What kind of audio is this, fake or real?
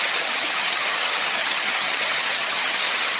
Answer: fake